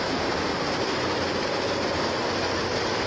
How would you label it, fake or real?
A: real